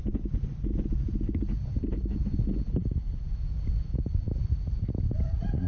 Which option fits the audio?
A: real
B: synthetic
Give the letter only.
A